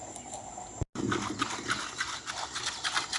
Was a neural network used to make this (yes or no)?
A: no